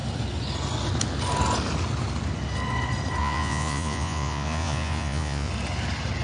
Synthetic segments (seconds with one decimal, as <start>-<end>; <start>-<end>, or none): 3.2-5.5